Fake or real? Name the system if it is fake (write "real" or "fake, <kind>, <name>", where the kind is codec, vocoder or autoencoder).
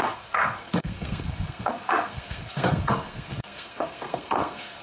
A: fake, codec, SNAC